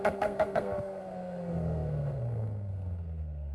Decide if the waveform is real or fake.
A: fake